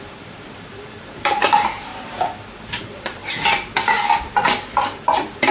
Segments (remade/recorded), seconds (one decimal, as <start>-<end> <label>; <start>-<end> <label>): 0.0-1.9 remade; 1.9-2.8 recorded; 2.8-3.2 remade; 3.2-5.5 recorded